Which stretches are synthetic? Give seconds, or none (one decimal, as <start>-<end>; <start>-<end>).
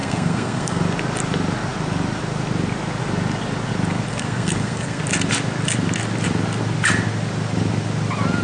0.0-0.8; 4.1-5.0